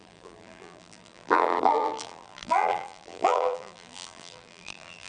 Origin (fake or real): fake